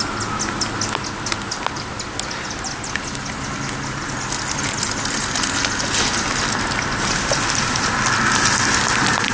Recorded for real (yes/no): yes